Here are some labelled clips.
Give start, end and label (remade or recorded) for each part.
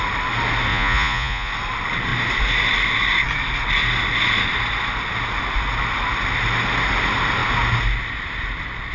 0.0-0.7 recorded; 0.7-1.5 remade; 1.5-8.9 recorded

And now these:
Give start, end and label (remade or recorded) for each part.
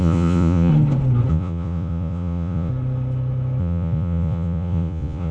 0.0-0.7 remade; 0.7-1.3 recorded; 1.3-2.7 remade; 2.7-3.6 recorded; 3.6-5.3 remade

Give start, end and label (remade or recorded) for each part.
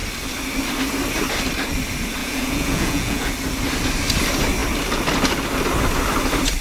0.0-2.2 recorded; 2.2-3.3 remade; 3.3-6.6 recorded